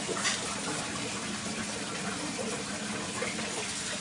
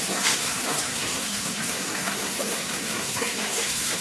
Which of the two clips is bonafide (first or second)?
first